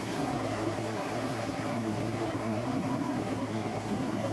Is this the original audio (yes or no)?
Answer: no